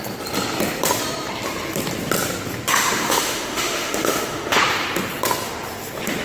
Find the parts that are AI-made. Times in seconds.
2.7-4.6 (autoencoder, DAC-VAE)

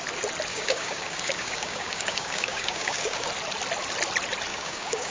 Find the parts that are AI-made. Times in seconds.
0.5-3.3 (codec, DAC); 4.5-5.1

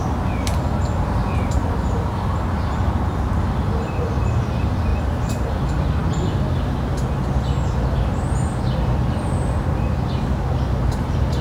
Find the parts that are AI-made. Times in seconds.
none

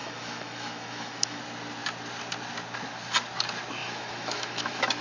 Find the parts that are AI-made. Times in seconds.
0.0-1.4 (autoencoder, DAC-VAE); 3.8-5.0

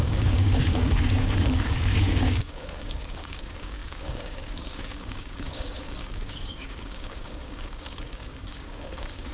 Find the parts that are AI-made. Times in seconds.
0.0-9.3 (codec, DAC)